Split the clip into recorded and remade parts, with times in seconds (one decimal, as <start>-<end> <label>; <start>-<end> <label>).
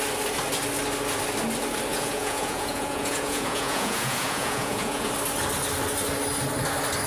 0.0-1.9 recorded; 1.9-5.1 remade; 5.1-7.1 recorded